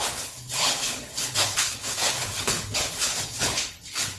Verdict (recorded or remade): remade